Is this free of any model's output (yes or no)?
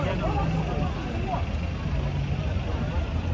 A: yes